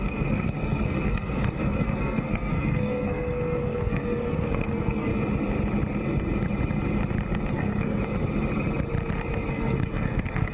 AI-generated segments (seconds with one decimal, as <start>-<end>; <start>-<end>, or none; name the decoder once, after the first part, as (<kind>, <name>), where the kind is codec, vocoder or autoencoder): 0.0-5.1 (codec, SNAC); 7.5-8.0; 9.5-10.5